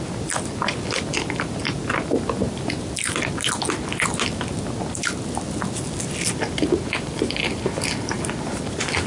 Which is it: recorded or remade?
recorded